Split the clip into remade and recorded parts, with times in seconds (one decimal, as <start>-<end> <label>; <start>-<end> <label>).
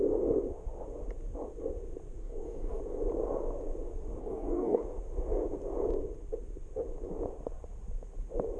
0.0-2.2 recorded; 2.2-2.8 remade; 2.8-4.2 recorded; 4.2-4.8 remade; 4.8-8.6 recorded